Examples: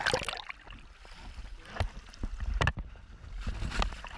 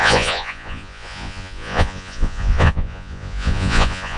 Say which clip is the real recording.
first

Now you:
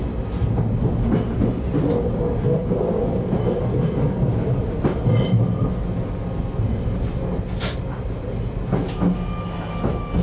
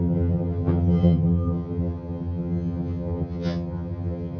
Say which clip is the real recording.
first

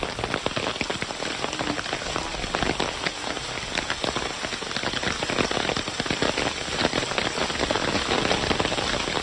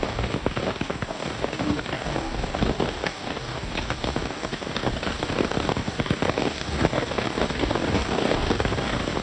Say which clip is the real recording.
first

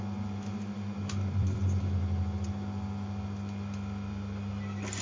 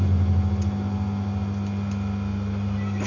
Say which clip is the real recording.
second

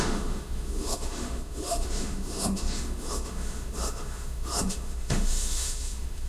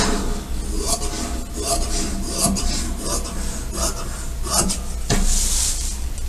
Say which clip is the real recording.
second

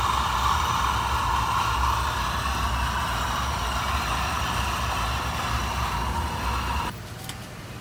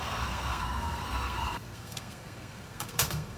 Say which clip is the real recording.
first